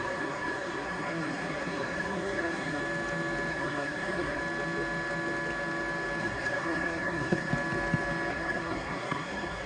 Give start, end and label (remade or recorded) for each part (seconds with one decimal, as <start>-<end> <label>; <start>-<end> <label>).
0.0-2.8 remade; 2.8-3.5 recorded; 3.5-4.4 remade; 4.4-6.2 recorded; 6.2-7.5 remade; 7.5-8.3 recorded; 8.3-9.7 remade